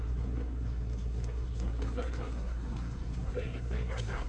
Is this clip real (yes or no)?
no